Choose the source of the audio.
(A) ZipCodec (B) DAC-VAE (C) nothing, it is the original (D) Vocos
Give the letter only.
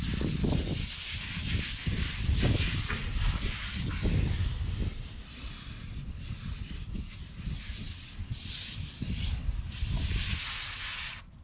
C